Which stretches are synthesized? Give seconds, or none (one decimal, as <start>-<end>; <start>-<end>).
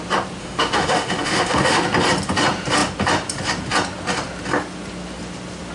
0.4-1.8